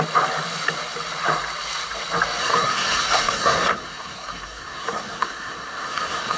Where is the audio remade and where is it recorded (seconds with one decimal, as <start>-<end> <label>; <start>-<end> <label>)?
0.0-2.4 recorded; 2.4-6.4 remade